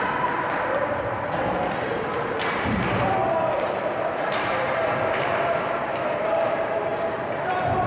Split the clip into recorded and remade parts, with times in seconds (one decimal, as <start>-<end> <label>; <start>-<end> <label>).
0.0-6.9 remade; 6.9-7.4 recorded; 7.4-7.9 remade